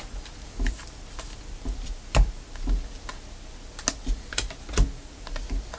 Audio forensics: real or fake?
real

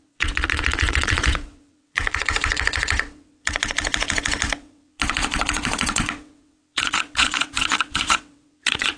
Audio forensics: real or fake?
fake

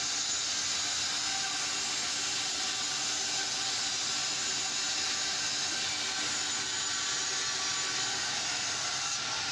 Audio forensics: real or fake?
real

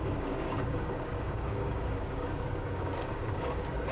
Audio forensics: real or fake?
fake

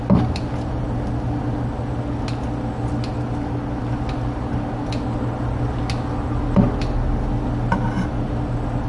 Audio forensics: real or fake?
real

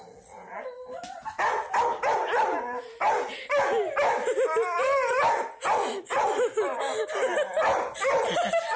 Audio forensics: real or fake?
real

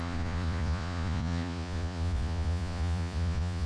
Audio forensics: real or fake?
fake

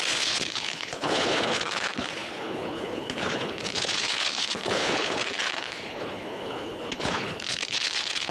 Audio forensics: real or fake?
fake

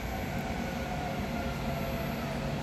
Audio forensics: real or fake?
real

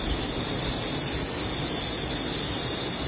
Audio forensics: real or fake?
real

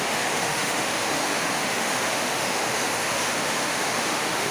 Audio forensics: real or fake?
fake